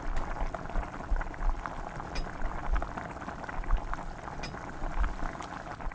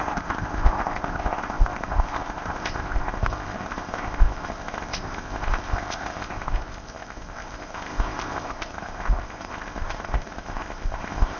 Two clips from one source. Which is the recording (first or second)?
first